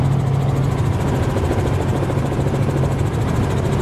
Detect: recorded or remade recorded